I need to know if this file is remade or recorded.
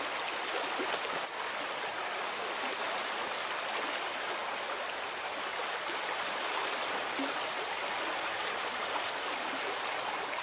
recorded